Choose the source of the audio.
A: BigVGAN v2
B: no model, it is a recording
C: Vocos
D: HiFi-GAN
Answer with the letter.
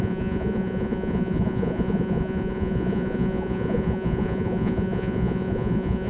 C